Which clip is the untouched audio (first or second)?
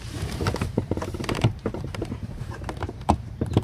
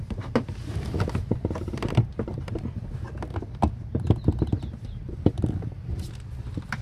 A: second